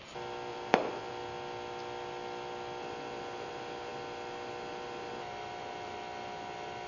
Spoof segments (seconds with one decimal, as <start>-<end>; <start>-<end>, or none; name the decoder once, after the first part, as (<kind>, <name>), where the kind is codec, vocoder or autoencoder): 0.5-1.1 (vocoder, BigVGAN v2)